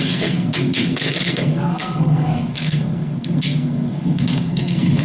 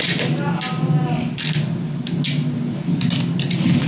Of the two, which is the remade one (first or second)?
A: first